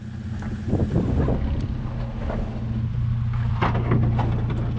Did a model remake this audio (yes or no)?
no